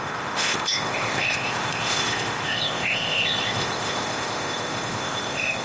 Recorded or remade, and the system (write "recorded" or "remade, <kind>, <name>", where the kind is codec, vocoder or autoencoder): remade, codec, ZipCodec